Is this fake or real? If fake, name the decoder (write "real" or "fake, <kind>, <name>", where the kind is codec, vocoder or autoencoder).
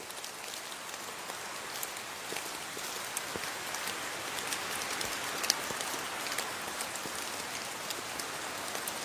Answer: real